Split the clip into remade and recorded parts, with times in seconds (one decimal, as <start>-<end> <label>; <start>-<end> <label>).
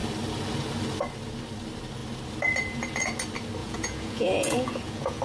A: 0.0-3.6 recorded; 3.6-5.2 remade